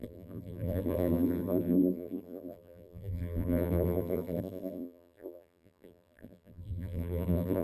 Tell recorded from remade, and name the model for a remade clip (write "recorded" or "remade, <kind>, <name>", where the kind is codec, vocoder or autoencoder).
remade, vocoder, BigVGAN v2